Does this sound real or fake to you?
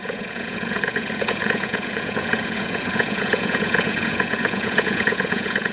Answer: fake